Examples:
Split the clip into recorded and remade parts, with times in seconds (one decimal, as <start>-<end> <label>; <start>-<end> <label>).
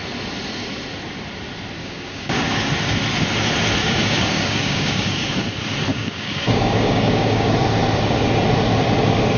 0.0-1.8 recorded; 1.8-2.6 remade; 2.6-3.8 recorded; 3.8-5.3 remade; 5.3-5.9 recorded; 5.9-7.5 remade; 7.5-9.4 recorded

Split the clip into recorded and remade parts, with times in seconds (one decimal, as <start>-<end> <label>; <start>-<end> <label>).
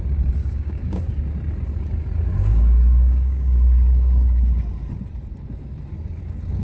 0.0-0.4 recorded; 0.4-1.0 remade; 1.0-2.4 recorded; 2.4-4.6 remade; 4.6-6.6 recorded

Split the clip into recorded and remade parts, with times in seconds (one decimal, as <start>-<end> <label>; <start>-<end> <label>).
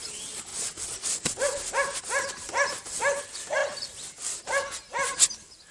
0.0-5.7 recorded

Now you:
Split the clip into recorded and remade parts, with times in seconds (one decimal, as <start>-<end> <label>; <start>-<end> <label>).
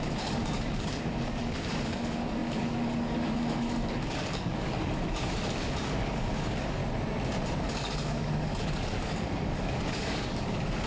0.0-6.8 remade; 6.8-7.6 recorded; 7.6-10.9 remade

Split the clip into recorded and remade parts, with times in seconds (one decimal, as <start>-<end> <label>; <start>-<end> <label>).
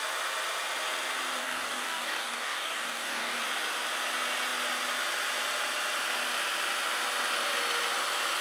0.0-1.4 recorded; 1.4-3.4 remade; 3.4-8.4 recorded